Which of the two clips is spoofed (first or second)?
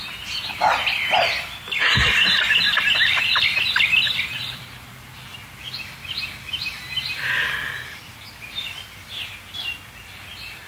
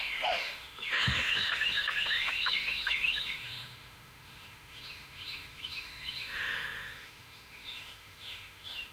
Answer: second